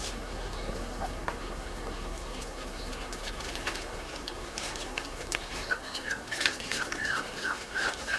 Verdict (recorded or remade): remade